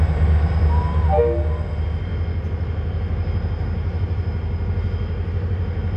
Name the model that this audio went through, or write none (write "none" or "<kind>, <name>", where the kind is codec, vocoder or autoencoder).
none